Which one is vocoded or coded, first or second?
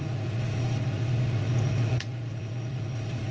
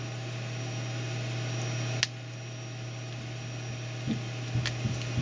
first